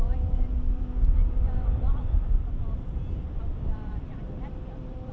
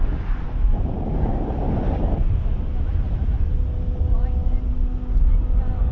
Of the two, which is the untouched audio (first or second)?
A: second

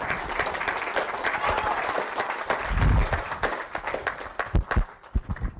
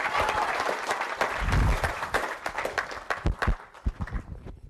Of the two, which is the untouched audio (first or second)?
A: first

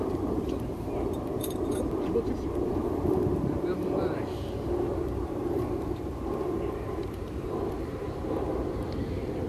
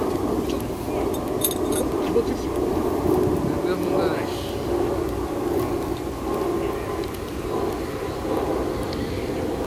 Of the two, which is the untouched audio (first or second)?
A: second